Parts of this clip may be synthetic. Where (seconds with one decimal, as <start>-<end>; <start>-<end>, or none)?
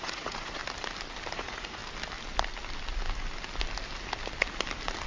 0.0-0.6; 1.3-1.8